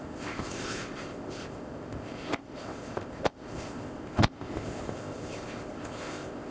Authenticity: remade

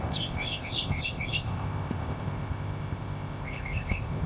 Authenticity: remade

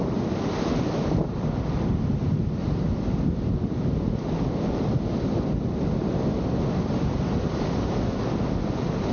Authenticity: recorded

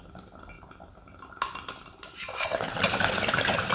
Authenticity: recorded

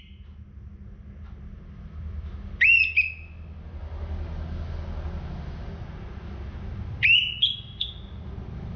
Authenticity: recorded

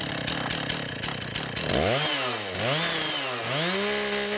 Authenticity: recorded